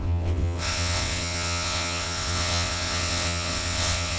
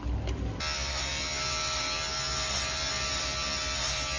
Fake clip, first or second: first